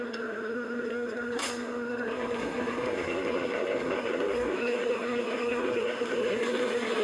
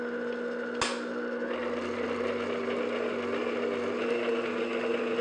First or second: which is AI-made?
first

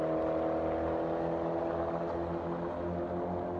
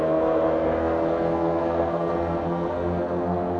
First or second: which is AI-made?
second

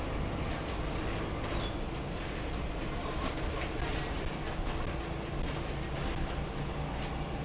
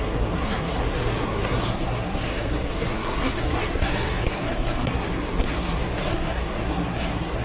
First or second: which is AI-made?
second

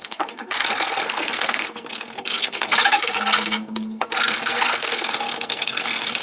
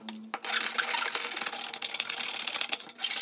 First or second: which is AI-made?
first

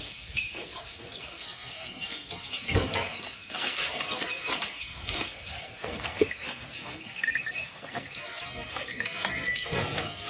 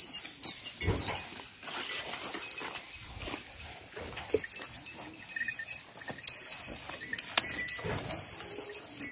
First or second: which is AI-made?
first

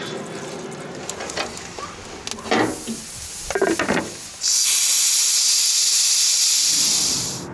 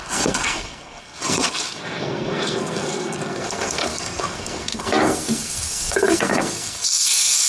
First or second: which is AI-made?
second